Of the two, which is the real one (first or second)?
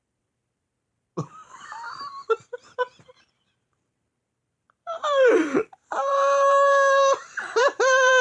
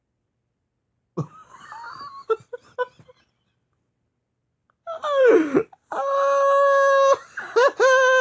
second